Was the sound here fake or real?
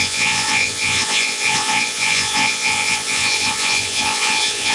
fake